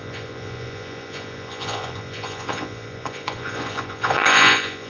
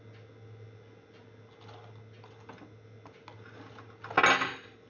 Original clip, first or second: second